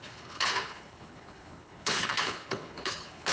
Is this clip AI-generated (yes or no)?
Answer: yes